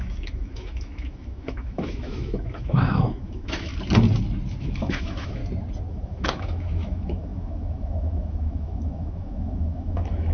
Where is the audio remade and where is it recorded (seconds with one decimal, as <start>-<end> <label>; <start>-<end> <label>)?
0.0-3.7 remade; 3.7-4.6 recorded; 4.6-5.4 remade; 5.4-5.9 recorded; 5.9-10.3 remade